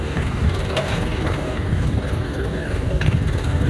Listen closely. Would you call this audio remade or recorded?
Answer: remade